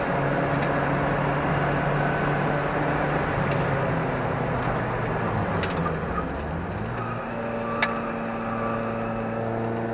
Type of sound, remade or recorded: recorded